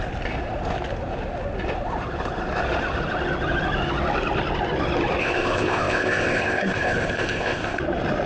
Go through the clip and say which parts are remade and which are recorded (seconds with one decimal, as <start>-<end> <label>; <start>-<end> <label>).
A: 0.0-5.2 recorded; 5.2-7.8 remade; 7.8-8.3 recorded

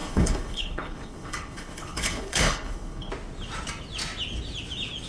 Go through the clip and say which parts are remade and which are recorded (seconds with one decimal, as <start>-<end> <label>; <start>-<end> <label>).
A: 0.0-3.1 remade; 3.1-5.1 recorded

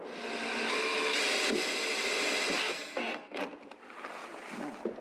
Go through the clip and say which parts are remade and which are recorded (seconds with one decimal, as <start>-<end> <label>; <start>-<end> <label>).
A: 0.0-2.6 recorded; 2.6-3.4 remade; 3.4-5.0 recorded